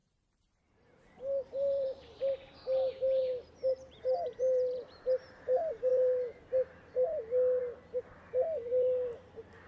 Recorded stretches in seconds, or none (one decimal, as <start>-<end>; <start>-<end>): none